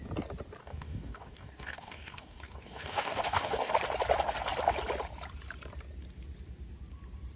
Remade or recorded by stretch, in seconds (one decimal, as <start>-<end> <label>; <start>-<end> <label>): 0.0-0.6 recorded; 0.6-3.7 remade; 3.7-7.4 recorded